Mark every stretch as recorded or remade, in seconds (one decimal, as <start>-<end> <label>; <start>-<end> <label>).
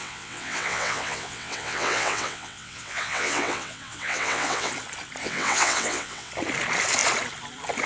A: 0.0-4.7 remade; 4.7-5.2 recorded; 5.2-6.3 remade; 6.3-7.9 recorded